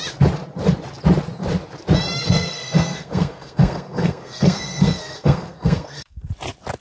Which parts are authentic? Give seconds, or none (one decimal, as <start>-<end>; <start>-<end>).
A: 0.0-2.2; 6.3-6.8